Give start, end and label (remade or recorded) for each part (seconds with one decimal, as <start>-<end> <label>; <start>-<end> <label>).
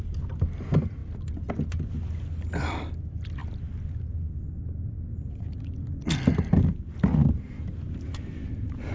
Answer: 0.0-8.9 recorded